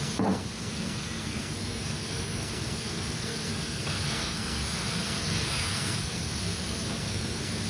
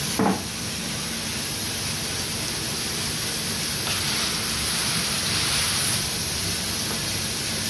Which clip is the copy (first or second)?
first